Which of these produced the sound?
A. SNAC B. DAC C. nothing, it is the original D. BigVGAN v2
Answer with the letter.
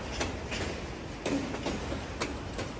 C